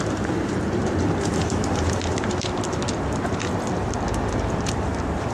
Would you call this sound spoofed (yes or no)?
yes